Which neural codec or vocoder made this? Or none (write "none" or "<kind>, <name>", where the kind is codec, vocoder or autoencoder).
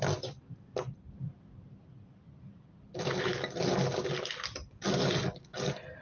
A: none